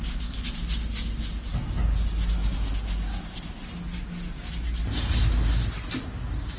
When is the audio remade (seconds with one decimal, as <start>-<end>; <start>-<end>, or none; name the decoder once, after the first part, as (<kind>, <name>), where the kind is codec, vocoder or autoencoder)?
none